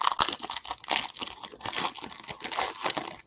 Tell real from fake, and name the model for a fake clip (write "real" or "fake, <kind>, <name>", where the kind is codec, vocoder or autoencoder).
real